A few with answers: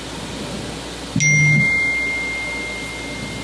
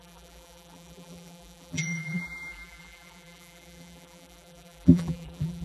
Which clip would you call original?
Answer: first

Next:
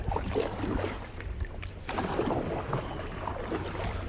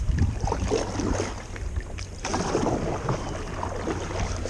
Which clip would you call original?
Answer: second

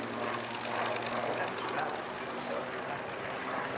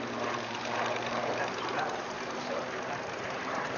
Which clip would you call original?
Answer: first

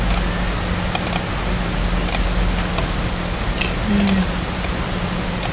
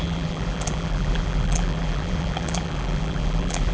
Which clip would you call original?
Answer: first